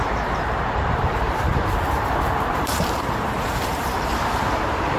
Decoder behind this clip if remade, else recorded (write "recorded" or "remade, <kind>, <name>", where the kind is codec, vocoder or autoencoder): remade, vocoder, BigVGAN v2